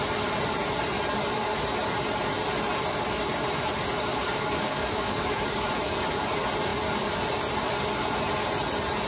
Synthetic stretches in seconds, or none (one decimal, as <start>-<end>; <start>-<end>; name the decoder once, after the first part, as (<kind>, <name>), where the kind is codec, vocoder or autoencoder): 4.1-5.4 (codec, DAC)